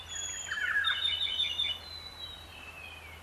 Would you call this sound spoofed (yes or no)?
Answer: no